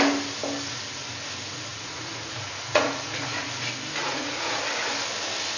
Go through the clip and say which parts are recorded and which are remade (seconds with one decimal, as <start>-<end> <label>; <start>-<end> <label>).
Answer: 0.0-1.7 recorded; 1.7-3.5 remade; 3.5-4.0 recorded; 4.0-4.6 remade; 4.6-5.6 recorded